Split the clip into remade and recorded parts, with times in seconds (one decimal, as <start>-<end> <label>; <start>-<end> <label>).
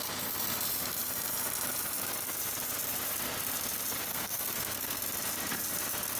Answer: 0.0-4.1 recorded; 4.1-5.0 remade; 5.0-6.2 recorded